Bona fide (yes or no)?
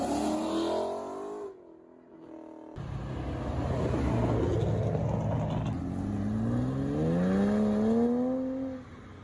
yes